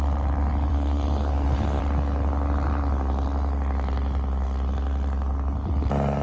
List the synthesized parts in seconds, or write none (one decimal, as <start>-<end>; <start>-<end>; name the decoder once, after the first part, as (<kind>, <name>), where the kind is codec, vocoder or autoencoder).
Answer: 0.7-1.8 (codec, SNAC)